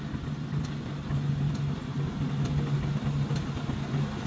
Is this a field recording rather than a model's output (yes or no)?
yes